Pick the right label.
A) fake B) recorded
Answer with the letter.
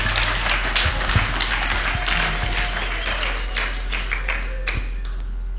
B